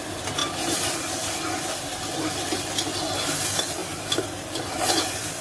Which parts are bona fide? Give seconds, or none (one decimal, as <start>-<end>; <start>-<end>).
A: 0.0-3.8; 4.9-5.4